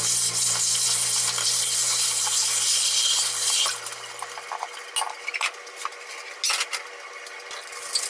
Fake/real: real